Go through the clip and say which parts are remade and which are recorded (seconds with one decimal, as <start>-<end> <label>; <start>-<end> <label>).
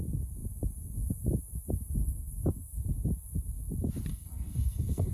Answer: 0.0-2.0 recorded; 2.0-2.8 remade; 2.8-4.1 recorded; 4.1-5.1 remade